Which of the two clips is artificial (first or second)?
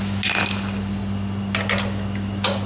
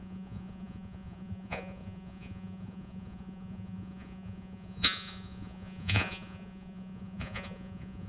second